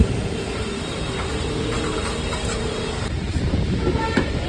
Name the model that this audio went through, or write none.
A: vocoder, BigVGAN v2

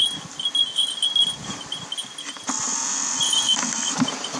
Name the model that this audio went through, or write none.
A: none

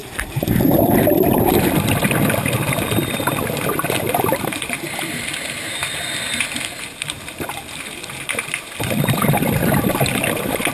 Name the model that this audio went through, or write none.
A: vocoder, BigVGAN v2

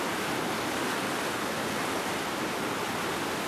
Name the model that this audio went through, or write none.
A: none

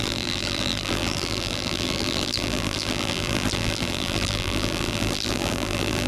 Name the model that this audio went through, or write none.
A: vocoder, BigVGAN v2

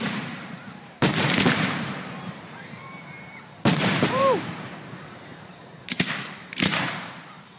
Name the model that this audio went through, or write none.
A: vocoder, BigVGAN v2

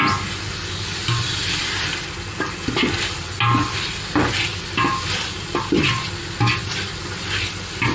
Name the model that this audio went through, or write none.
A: none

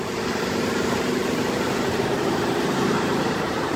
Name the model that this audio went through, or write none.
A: vocoder, BigVGAN v2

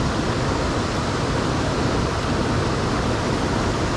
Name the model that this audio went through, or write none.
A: none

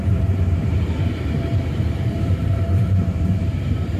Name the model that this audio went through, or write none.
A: vocoder, BigVGAN v2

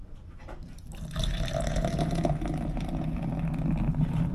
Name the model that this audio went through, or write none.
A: vocoder, BigVGAN v2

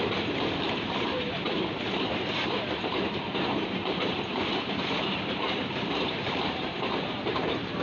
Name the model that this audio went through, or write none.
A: vocoder, BigVGAN v2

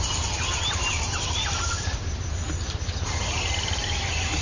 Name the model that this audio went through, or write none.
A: vocoder, BigVGAN v2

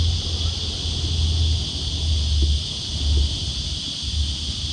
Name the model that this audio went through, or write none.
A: none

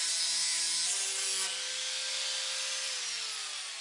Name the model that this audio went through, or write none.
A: none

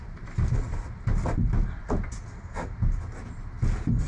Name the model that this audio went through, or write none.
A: none